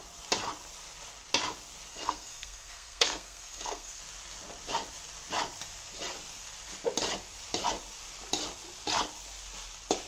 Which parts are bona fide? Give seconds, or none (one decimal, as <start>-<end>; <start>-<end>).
0.0-1.9; 4.0-10.1